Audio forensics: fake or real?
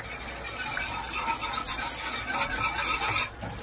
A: real